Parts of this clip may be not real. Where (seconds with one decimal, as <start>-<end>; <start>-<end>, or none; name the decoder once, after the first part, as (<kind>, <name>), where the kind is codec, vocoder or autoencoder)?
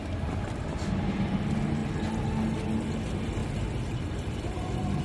0.0-1.8 (vocoder, BigVGAN v2); 2.8-5.0